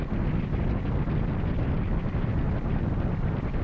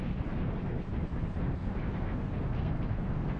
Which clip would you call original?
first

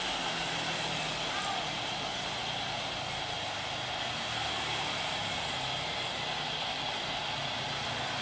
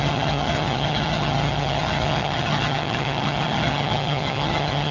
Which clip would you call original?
first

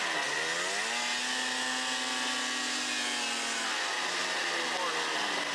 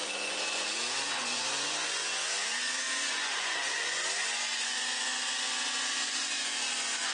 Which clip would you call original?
first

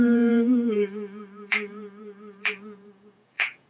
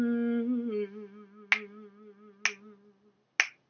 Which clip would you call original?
second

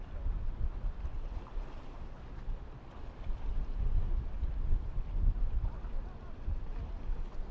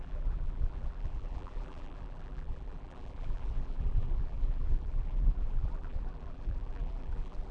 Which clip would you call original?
first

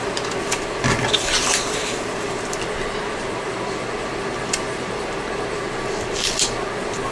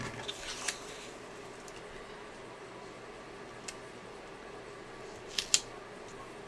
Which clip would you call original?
second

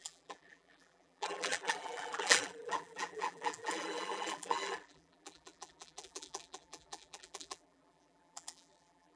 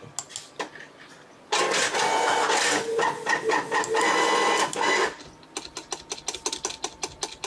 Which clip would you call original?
second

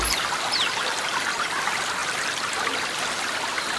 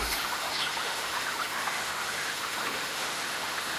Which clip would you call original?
first